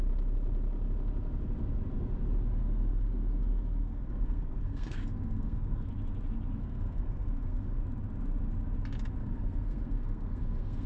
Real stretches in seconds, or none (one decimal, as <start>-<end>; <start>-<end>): 0.0-2.5; 5.9-6.6; 7.8-9.2